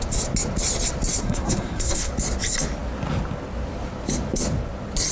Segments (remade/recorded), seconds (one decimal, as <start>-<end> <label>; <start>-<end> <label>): 0.0-1.2 recorded; 1.2-2.1 remade; 2.1-5.1 recorded